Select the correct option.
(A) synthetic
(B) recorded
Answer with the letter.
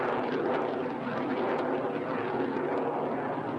B